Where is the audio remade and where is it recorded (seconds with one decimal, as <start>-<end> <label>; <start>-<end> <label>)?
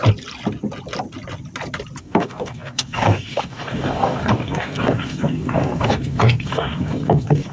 0.0-2.0 recorded; 2.0-7.5 remade